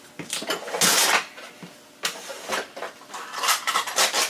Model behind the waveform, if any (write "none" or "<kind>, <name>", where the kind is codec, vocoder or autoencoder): none